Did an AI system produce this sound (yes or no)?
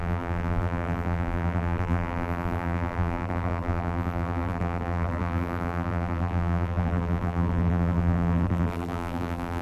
yes